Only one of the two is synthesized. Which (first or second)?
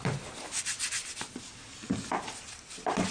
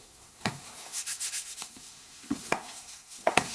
second